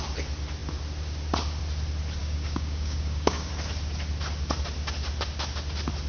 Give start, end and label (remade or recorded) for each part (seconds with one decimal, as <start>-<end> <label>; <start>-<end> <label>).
0.0-2.2 recorded; 2.2-3.5 remade; 3.5-6.1 recorded